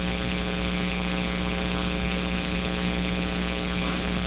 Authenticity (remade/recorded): remade